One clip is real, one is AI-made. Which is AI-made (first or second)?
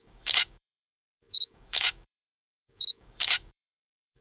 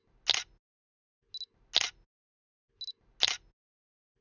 first